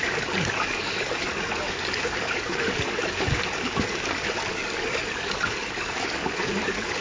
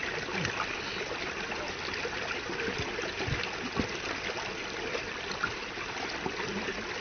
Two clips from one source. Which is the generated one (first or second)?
first